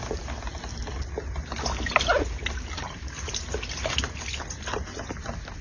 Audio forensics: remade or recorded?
recorded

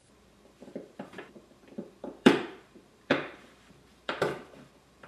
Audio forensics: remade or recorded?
remade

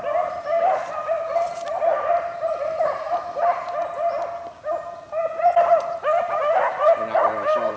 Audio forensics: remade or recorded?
recorded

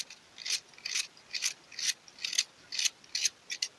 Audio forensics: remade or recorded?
recorded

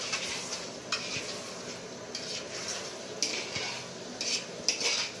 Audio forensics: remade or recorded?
recorded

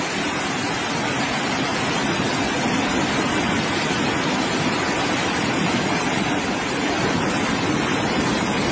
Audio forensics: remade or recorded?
recorded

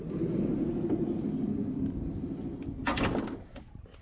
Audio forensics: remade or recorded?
recorded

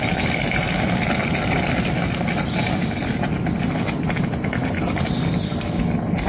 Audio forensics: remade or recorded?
recorded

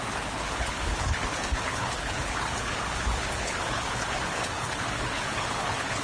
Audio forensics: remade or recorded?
remade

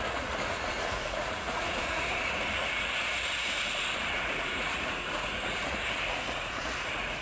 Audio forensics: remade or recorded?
remade